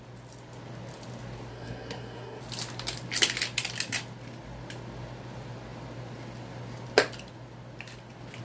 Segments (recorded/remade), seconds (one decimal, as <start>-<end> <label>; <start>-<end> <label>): 0.0-1.5 recorded; 1.5-2.4 remade; 2.4-8.4 recorded